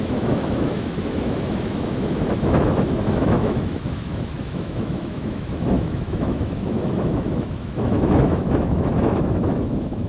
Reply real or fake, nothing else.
fake